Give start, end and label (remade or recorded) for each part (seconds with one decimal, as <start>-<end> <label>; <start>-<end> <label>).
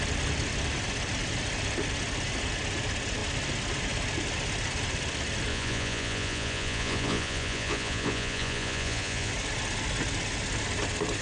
0.0-5.5 recorded; 5.5-9.3 remade; 9.3-11.2 recorded